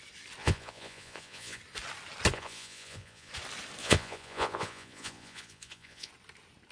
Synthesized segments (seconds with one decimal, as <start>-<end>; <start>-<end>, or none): 0.4-1.6; 2.3-3.3; 3.8-6.1

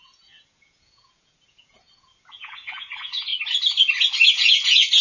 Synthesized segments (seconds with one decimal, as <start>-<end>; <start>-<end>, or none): 0.0-3.3; 4.3-5.0

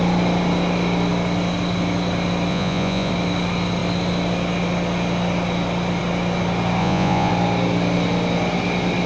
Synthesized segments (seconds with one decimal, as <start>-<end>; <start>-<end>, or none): 2.5-3.1; 6.8-7.3

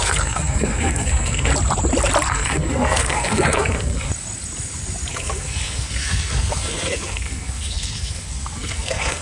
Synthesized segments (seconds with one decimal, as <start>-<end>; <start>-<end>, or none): 0.0-1.5; 2.3-4.1; 5.1-9.2

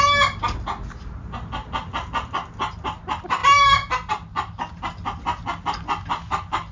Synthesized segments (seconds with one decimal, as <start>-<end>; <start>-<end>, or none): none

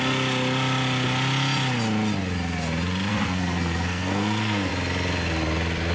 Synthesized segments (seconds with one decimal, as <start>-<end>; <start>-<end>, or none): 3.1-4.7

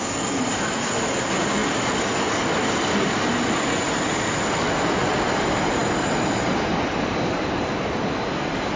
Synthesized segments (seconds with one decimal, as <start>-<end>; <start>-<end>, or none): none

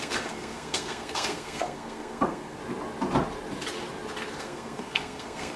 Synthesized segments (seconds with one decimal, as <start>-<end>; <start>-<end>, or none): 0.0-2.6; 4.4-5.6